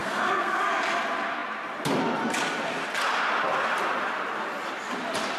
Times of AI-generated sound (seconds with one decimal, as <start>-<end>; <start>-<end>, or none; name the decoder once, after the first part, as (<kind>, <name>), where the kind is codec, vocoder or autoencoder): 0.0-0.6 (codec, SNAC)